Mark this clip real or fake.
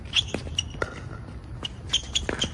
real